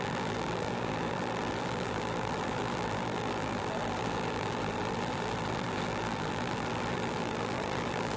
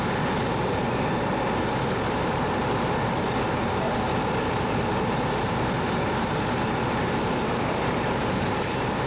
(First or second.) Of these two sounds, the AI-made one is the first